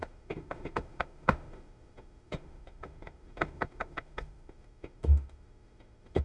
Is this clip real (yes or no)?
no